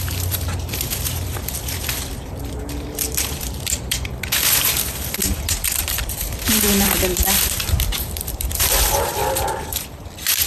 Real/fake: fake